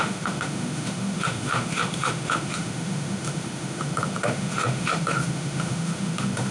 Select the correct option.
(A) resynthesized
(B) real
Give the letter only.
A